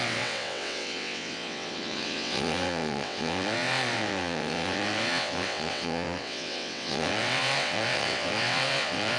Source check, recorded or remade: remade